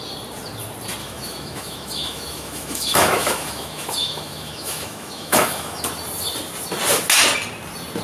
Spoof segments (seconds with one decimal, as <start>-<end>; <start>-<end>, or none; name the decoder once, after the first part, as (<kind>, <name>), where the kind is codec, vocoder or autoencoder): 1.0-5.8 (autoencoder, DAC-VAE)